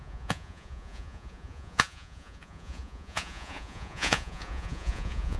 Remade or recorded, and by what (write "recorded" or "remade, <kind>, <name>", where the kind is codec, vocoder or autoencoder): remade, vocoder, Vocos